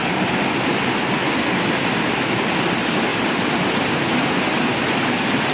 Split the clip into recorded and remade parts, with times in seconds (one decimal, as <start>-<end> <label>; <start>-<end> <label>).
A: 0.0-5.5 recorded